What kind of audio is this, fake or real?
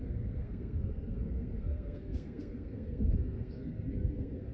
fake